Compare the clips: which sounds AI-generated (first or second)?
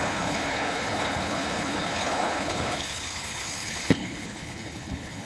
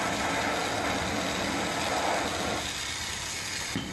first